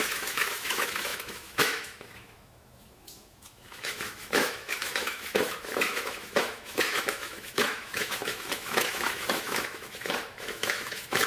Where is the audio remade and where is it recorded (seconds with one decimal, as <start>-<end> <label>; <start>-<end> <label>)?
0.0-11.3 remade